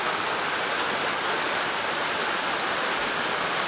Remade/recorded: recorded